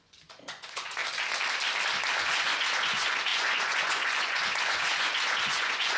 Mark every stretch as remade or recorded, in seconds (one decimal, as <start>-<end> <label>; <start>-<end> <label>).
0.0-1.0 remade; 1.0-2.2 recorded; 2.2-6.0 remade

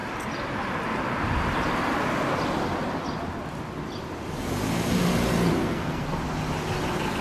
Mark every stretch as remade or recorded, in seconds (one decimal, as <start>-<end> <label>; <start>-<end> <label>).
0.0-5.6 recorded; 5.6-6.2 remade; 6.2-7.2 recorded